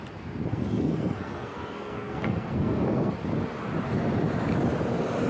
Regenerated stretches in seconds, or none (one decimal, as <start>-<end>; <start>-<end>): 0.5-3.1

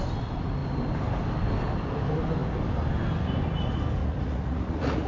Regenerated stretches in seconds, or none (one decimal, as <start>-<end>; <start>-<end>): 4.0-5.1

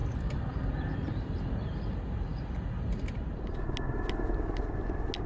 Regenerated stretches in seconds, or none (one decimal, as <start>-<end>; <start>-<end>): 0.0-1.1

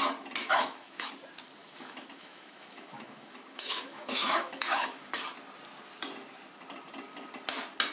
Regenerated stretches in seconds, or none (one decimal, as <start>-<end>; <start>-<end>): 0.4-1.1; 1.6-5.1

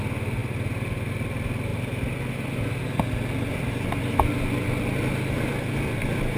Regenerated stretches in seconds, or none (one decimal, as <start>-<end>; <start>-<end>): 0.4-1.1

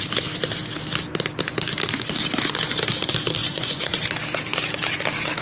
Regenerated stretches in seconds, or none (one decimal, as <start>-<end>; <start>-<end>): 3.4-3.9